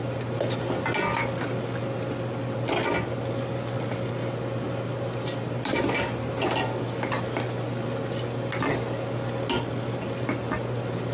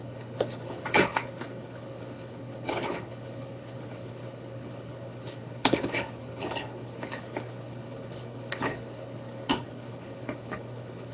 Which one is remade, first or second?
second